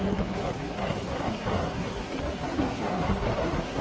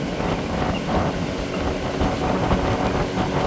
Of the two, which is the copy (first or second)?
first